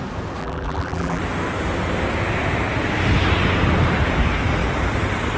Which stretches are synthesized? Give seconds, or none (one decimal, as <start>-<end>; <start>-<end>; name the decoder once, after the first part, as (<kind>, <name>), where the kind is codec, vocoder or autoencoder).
0.4-1.2 (vocoder, BigVGAN v2)